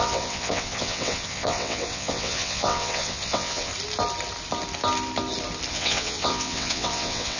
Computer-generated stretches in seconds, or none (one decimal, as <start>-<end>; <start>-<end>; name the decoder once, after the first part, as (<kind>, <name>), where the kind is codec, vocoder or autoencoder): 0.0-3.7 (vocoder, WaveNeXt); 5.7-7.4